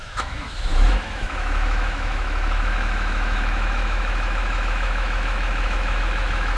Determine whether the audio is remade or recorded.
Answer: remade